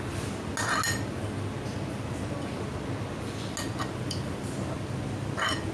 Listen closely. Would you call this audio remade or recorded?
recorded